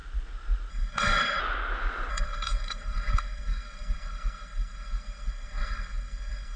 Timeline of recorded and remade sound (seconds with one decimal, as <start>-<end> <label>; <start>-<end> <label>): 0.0-0.7 recorded; 0.7-1.4 remade; 1.4-2.1 recorded; 2.1-6.6 remade